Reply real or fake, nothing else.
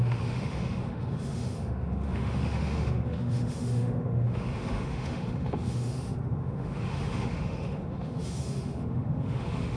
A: fake